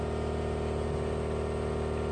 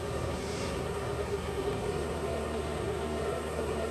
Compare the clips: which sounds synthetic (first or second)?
second